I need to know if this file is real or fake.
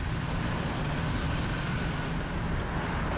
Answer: real